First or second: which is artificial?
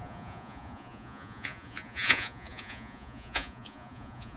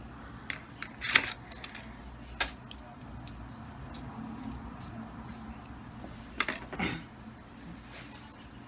first